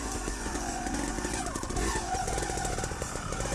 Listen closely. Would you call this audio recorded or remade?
remade